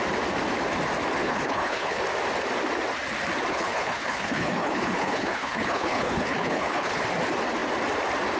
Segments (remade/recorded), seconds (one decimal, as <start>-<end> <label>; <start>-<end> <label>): 0.0-1.2 recorded; 1.2-2.0 remade; 2.0-3.5 recorded; 3.5-7.0 remade; 7.0-8.4 recorded